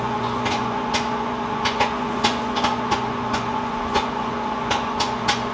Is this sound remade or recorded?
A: remade